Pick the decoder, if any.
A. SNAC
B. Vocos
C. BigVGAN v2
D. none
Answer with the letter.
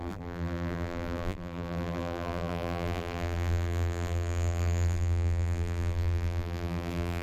C